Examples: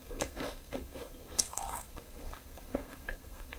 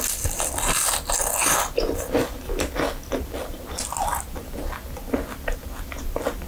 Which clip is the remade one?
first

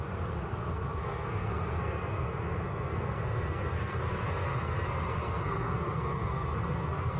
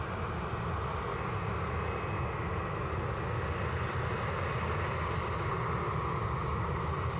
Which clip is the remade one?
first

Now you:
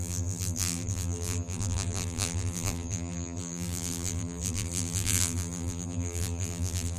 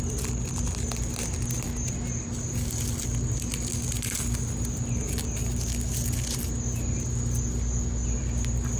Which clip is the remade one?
first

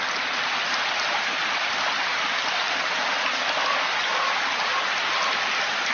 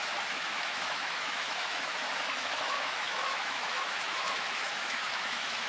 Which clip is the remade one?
second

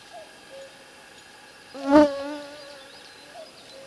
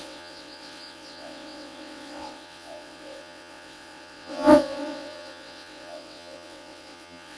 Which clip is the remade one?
second